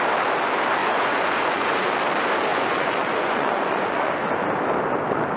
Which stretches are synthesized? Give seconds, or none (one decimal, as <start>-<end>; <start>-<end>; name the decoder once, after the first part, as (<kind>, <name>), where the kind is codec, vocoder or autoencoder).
0.8-1.9 (vocoder, Vocos); 2.5-4.1